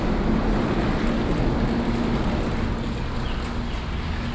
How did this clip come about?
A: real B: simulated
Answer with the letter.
A